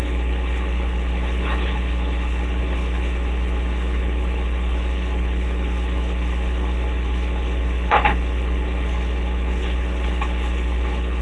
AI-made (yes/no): yes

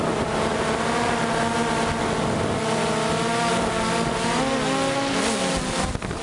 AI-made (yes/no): no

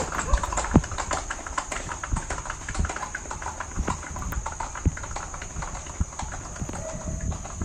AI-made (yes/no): no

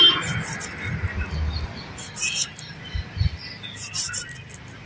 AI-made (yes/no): no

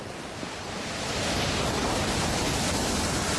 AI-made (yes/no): no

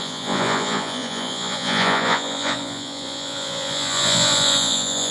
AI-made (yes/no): yes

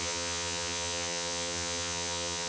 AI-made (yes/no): yes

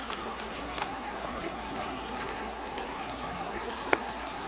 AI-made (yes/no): yes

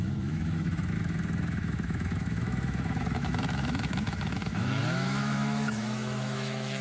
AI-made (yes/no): yes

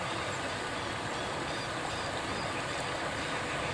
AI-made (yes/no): no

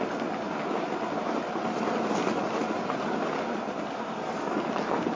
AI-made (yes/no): no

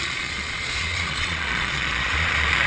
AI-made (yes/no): yes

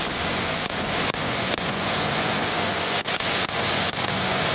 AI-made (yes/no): yes